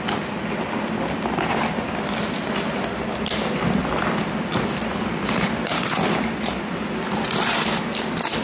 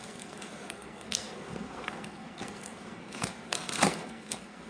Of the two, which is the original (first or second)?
first